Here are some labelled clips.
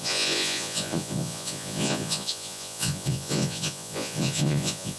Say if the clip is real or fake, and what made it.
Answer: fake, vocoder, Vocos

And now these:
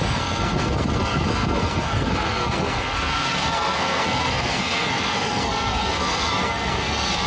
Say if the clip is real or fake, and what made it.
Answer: fake, codec, SNAC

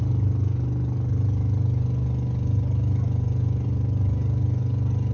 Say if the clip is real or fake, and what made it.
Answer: real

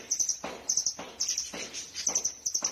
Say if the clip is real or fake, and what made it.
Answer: real